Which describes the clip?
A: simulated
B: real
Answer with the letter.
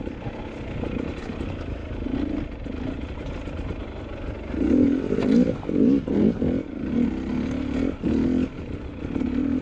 B